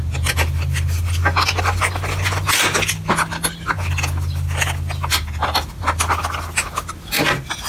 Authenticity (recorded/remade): recorded